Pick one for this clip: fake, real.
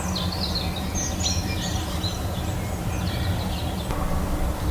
real